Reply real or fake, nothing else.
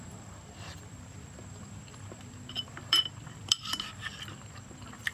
fake